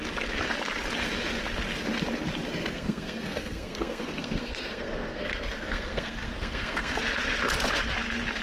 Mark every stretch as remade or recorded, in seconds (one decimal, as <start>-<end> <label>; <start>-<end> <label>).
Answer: 0.0-2.6 recorded; 2.6-7.0 remade; 7.0-8.4 recorded